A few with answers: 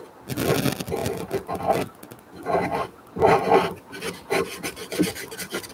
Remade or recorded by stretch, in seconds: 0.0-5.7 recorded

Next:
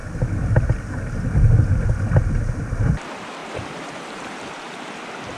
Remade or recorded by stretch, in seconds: 0.0-3.4 recorded; 3.4-4.9 remade; 4.9-5.4 recorded

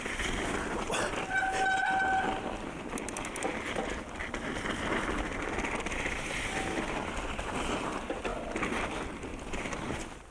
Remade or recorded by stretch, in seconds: 0.0-10.3 recorded

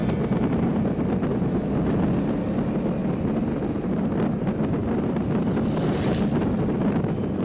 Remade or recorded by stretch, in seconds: 0.0-1.4 remade; 1.4-3.0 recorded; 3.0-3.5 remade; 3.5-4.8 recorded; 4.8-6.4 remade; 6.4-7.4 recorded

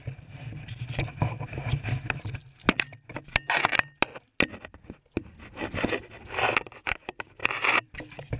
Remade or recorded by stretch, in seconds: 0.0-2.4 remade; 2.4-6.7 recorded; 6.7-8.4 remade

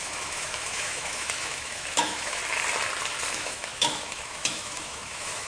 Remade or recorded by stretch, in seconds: 0.0-2.4 remade; 2.4-3.3 recorded; 3.3-5.5 remade